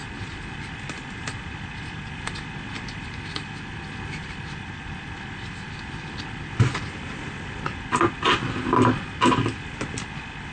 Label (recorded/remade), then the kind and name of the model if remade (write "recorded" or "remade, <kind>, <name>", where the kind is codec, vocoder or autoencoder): recorded